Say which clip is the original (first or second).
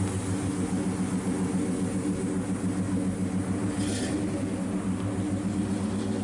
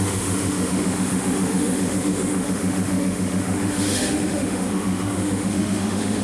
first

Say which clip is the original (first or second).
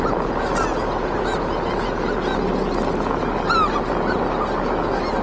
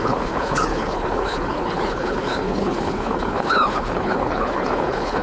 first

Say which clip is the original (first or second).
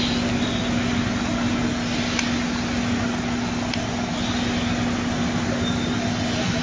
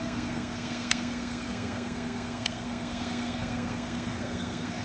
first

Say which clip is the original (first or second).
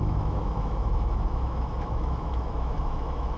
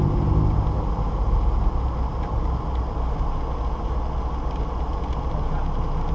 second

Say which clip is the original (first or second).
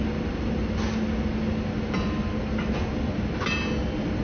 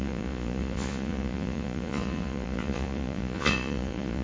first